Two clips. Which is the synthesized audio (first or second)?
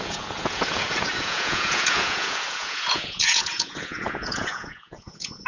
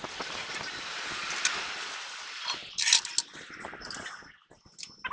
first